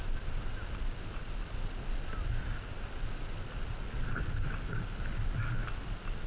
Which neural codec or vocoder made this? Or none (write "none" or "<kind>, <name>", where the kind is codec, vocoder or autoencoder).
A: none